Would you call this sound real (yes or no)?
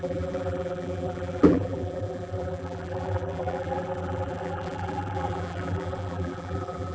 no